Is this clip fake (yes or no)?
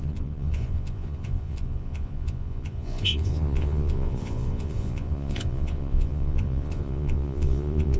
yes